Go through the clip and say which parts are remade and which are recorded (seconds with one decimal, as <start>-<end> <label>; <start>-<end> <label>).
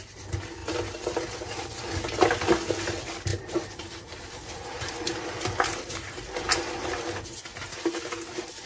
0.0-0.6 recorded; 0.6-2.7 remade; 2.7-3.3 recorded; 3.3-6.5 remade; 6.5-8.7 recorded